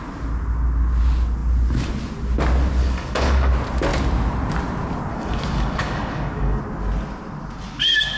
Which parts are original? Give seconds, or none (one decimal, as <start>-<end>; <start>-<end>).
0.0-2.8; 3.5-5.1; 6.6-8.2